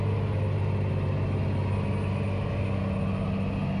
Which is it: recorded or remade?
recorded